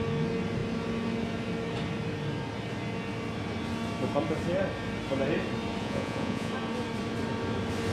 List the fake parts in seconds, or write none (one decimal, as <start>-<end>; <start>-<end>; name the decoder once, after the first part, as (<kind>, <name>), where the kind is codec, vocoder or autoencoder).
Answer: 5.8-6.5 (vocoder, Vocos)